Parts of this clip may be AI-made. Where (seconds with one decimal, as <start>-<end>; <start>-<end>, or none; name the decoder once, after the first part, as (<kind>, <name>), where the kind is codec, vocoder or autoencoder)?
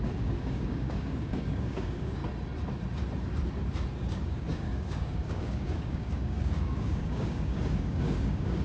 0.0-2.2 (codec, DAC); 4.0-8.6